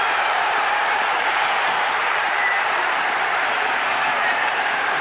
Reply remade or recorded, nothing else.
remade